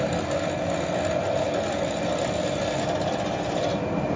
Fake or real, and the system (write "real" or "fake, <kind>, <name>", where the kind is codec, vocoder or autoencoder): real